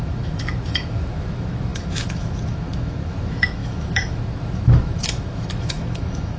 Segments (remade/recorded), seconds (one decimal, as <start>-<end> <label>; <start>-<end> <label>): 0.0-6.4 remade